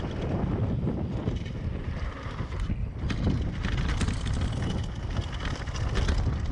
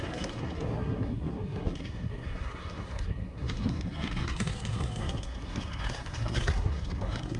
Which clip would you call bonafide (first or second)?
first